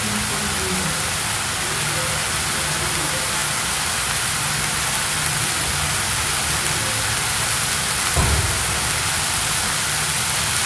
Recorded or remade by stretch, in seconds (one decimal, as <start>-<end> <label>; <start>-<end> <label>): 0.0-10.7 recorded